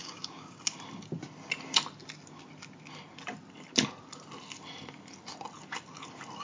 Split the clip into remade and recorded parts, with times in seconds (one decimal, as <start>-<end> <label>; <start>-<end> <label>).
0.0-0.6 remade; 0.6-6.4 recorded